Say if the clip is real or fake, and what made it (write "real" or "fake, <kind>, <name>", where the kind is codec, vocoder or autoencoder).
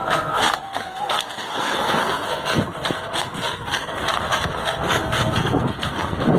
fake, codec, SNAC